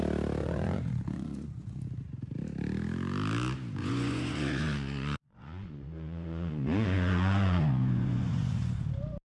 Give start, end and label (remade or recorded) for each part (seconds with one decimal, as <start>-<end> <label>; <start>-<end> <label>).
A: 0.0-0.4 recorded; 0.4-1.8 remade; 1.8-3.8 recorded; 3.8-8.9 remade; 8.9-9.3 recorded